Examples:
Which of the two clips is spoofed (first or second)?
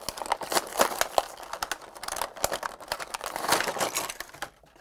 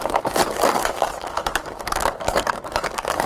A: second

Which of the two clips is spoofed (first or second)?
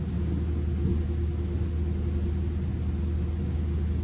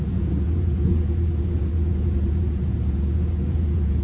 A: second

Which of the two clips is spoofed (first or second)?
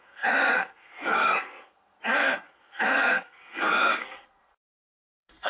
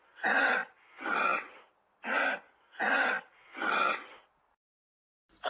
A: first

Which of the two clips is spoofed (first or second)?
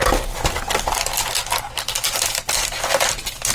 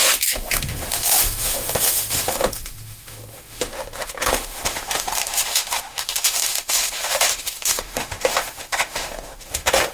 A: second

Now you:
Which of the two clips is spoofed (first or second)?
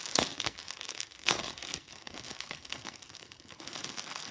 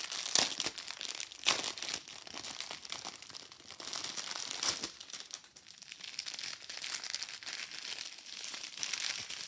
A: first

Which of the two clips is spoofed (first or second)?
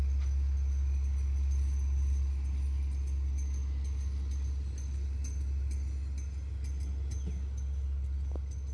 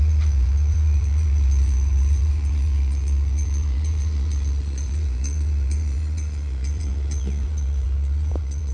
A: second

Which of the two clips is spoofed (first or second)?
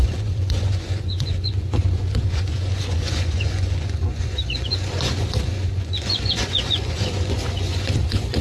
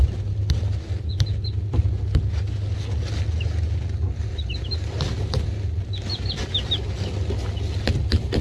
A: first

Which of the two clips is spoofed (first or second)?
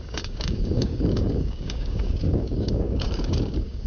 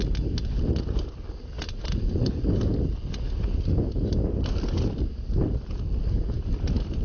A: first